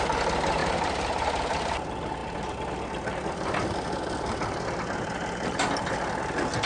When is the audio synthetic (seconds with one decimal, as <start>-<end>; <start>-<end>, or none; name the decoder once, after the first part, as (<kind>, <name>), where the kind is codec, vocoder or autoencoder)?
0.6-1.6 (vocoder, BigVGAN v2)